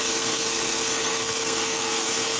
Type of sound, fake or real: fake